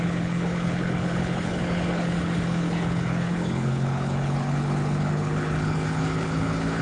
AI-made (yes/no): yes